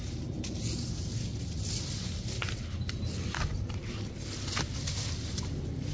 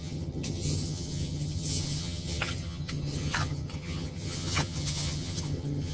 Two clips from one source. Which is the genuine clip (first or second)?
first